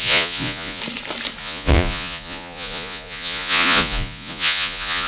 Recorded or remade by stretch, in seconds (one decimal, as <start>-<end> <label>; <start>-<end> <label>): 0.0-0.8 remade; 0.8-1.4 recorded; 1.4-5.1 remade